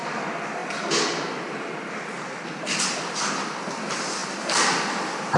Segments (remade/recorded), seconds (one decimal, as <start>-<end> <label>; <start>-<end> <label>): 0.0-5.4 recorded